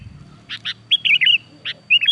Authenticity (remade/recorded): recorded